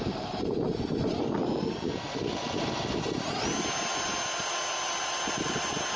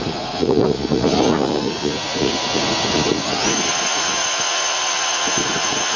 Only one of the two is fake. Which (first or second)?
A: second